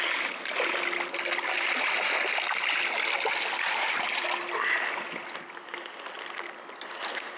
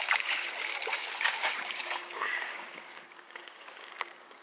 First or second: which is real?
first